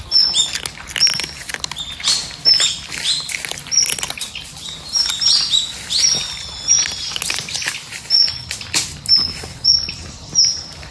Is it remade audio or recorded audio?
recorded